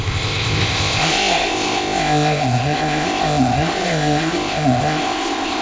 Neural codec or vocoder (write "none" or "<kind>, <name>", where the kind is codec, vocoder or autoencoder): codec, ZipCodec